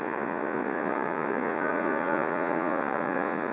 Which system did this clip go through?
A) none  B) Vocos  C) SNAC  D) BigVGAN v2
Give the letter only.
B